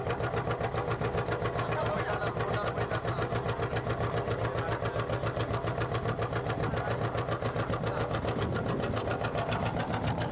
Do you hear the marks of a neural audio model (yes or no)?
no